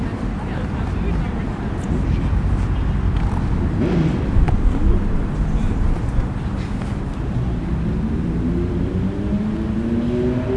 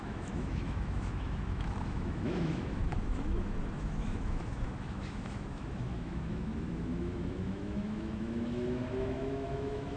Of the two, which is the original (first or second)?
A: first